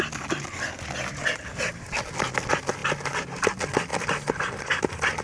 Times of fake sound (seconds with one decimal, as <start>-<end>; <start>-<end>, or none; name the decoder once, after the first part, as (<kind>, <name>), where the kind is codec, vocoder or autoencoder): none